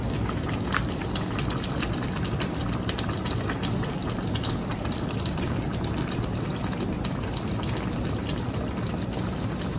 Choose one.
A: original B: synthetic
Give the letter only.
A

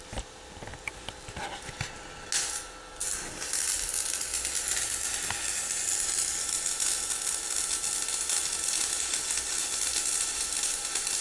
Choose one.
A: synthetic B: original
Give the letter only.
B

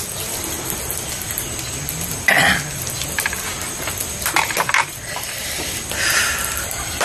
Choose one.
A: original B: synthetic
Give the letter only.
A